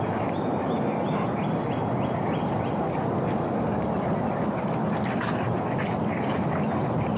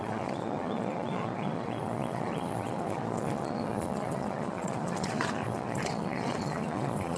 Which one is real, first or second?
first